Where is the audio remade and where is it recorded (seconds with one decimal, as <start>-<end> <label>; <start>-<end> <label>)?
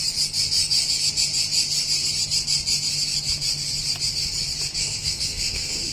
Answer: 0.0-4.8 recorded; 4.8-5.9 remade